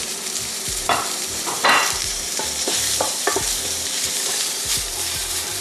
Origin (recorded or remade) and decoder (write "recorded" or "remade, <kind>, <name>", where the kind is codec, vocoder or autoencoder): remade, vocoder, BigVGAN v2